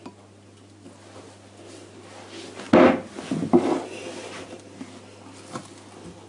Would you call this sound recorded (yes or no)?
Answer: yes